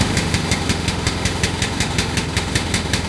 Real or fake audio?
fake